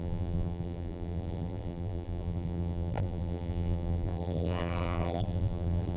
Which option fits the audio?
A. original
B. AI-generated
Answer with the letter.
B